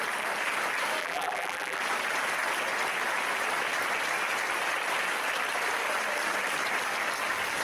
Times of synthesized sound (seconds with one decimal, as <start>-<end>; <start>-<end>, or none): 1.0-1.8